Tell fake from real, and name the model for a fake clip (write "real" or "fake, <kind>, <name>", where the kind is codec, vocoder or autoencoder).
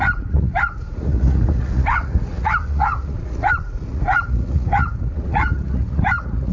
fake, vocoder, Vocos